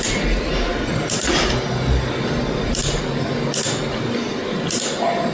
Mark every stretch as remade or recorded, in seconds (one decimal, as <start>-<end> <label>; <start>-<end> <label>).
0.0-5.3 recorded